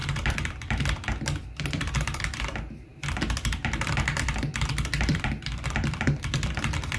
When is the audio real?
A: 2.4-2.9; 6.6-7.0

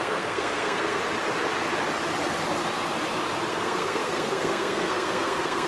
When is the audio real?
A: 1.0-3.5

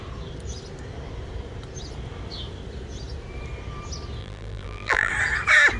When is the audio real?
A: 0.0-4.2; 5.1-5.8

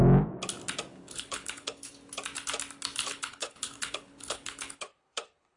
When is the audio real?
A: 0.0-0.9; 1.9-3.0

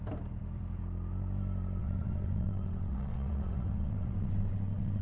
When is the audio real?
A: 0.0-1.8